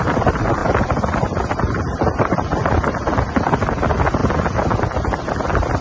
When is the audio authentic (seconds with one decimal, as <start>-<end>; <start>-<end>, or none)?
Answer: 4.2-4.8